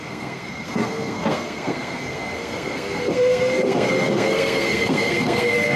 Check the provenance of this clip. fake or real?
fake